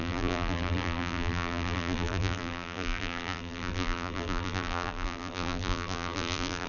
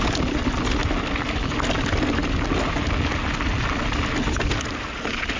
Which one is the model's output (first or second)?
first